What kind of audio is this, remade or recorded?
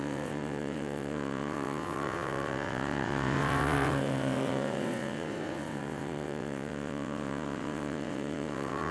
remade